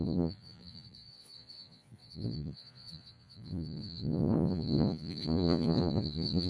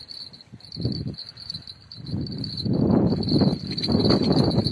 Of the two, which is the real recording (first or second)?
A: second